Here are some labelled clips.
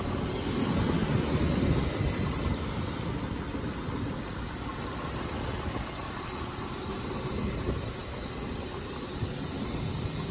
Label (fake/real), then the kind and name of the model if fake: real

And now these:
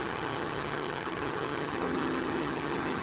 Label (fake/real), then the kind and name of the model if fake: fake, vocoder, HiFi-GAN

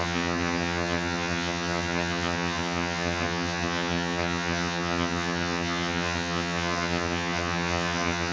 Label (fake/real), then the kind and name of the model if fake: fake, vocoder, HiFi-GAN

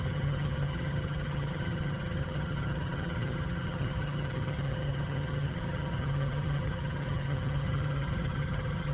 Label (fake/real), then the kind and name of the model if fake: fake, vocoder, HiFi-GAN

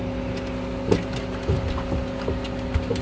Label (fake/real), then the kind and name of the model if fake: real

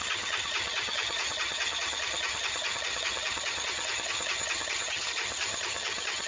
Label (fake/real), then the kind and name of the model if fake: fake, vocoder, HiFi-GAN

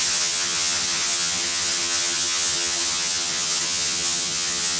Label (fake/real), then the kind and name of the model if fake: fake, vocoder, HiFi-GAN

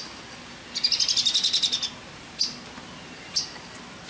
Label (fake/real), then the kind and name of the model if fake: real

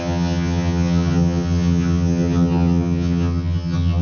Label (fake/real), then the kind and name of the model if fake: fake, vocoder, HiFi-GAN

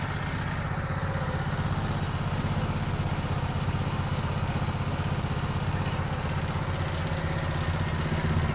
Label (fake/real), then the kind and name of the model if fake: real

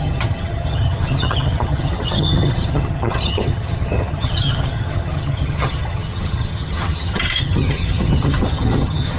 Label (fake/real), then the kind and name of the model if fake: fake, vocoder, HiFi-GAN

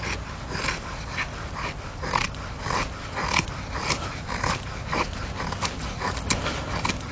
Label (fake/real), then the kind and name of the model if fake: real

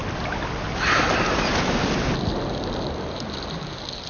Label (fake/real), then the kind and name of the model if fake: real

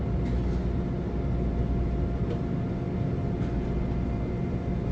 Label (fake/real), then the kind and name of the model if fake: real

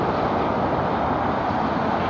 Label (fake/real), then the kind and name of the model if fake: real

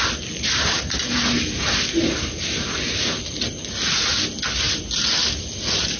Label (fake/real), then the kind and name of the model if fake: real